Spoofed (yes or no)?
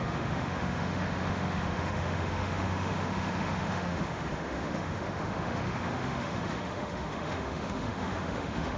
yes